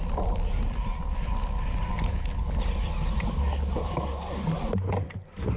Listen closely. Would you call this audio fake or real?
real